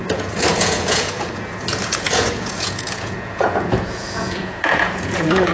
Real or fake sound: fake